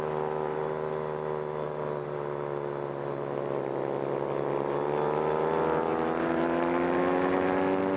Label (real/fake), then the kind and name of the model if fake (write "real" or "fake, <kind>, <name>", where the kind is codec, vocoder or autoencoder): real